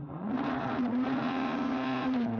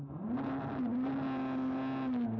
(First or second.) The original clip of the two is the second